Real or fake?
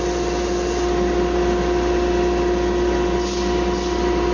real